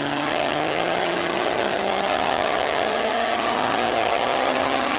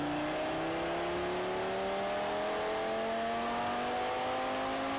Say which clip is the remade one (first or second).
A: first